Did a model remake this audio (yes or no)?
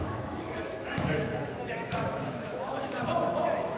yes